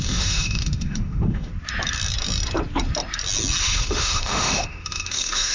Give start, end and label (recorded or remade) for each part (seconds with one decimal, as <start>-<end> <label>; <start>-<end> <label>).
0.0-1.5 remade; 1.5-3.6 recorded; 3.6-5.5 remade